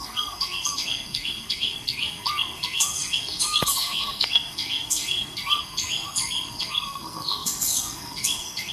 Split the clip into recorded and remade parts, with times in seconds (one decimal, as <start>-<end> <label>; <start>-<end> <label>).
0.0-8.7 remade